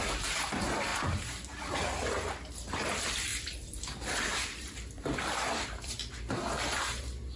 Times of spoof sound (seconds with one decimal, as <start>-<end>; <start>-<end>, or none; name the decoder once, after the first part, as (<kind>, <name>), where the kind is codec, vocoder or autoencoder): 0.0-7.4 (vocoder, BigVGAN v2)